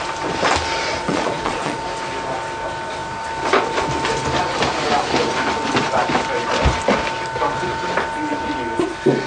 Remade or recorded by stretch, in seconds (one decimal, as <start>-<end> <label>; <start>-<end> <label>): 0.0-1.0 recorded; 1.0-1.8 remade; 1.8-9.3 recorded